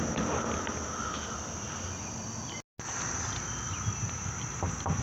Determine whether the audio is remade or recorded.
recorded